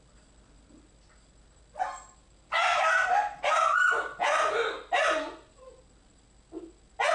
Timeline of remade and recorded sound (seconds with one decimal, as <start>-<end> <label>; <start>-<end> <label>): 0.0-2.2 recorded; 2.2-5.1 remade; 5.1-7.1 recorded